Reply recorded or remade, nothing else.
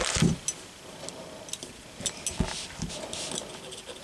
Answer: recorded